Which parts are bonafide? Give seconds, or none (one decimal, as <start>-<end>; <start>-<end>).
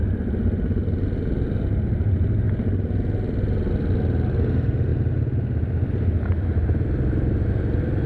0.0-8.1